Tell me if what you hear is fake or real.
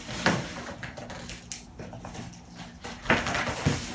real